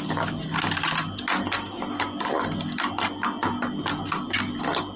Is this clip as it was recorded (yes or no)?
yes